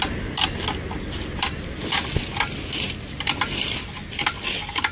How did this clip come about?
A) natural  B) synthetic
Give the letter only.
A